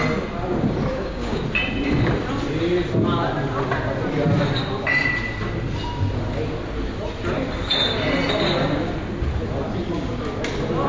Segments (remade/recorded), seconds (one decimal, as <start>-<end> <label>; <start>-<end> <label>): 0.0-0.9 recorded; 0.9-1.4 remade; 1.4-10.9 recorded